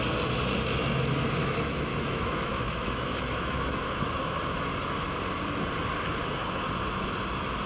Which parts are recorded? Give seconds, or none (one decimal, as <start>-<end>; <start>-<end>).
0.0-1.4; 3.8-7.7